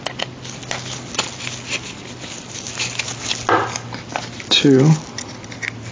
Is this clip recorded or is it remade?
recorded